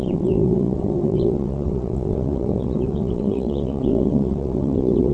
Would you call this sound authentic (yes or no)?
no